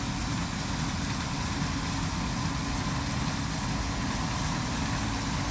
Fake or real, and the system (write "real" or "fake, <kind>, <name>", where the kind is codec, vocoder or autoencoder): real